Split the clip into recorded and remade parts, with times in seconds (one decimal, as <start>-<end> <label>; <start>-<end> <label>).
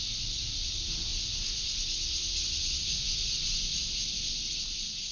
0.0-5.1 recorded